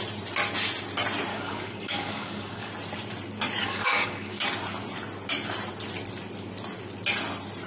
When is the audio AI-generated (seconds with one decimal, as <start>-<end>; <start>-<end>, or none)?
1.3-2.7; 3.6-4.4